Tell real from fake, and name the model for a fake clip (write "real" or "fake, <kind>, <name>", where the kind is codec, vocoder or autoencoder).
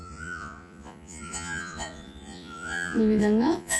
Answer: fake, vocoder, Vocos